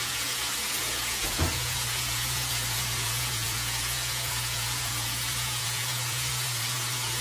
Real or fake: fake